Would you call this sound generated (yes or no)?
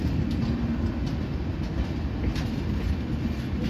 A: no